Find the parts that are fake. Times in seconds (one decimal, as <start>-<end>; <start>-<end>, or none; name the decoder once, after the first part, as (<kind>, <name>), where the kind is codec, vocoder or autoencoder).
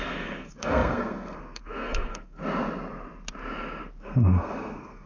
0.0-2.4 (codec, SNAC); 4.0-5.1